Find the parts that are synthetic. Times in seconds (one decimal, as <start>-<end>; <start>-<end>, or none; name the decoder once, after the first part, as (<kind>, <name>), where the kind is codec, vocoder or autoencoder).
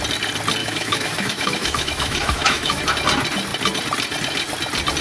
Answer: 0.6-2.8 (autoencoder, DAC-VAE)